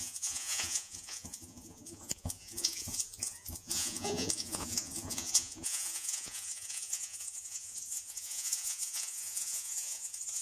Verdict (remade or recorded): remade